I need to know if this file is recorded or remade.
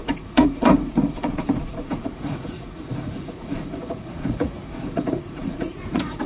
remade